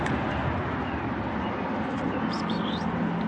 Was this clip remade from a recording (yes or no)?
no